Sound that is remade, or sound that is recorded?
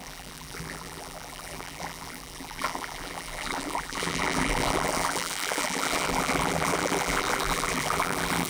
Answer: remade